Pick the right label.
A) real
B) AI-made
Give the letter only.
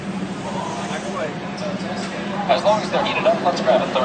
B